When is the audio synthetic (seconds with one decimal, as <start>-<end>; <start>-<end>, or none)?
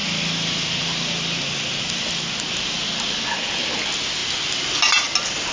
none